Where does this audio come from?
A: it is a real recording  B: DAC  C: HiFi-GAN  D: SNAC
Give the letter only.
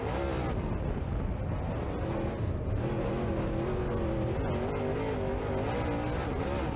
A